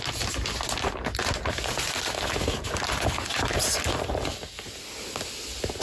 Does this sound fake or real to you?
real